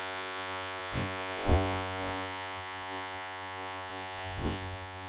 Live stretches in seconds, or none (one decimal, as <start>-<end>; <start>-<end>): none